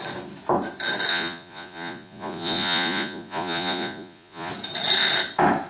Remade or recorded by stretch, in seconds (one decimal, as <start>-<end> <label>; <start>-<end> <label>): 0.0-1.1 recorded; 1.1-4.5 remade; 4.5-5.7 recorded